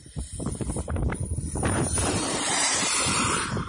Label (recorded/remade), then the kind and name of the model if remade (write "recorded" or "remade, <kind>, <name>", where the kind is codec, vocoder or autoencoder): remade, vocoder, BigVGAN v2